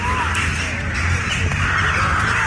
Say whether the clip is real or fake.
real